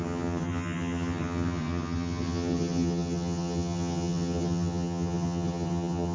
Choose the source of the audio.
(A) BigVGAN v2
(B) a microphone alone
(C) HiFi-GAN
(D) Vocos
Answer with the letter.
C